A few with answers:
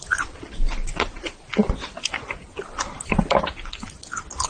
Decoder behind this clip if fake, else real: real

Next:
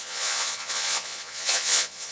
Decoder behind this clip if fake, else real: fake, vocoder, Vocos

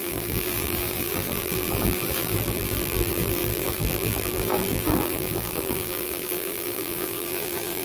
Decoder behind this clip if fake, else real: fake, vocoder, BigVGAN v2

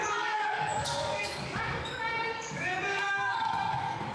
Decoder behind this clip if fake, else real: fake, codec, DAC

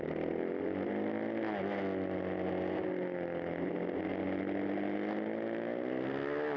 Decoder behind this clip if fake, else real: real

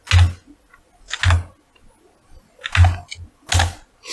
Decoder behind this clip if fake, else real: real